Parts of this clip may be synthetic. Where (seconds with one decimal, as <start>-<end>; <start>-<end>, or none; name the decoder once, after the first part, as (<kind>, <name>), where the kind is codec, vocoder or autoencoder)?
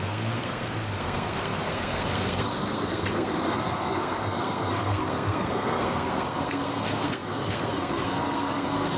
0.0-9.0 (codec, SNAC)